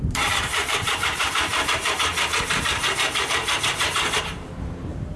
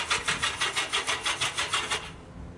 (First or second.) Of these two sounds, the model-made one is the first